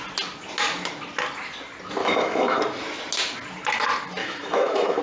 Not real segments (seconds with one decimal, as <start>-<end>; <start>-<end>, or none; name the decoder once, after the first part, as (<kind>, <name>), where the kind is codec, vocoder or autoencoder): 2.0-2.6 (autoencoder, DAC-VAE); 4.2-5.0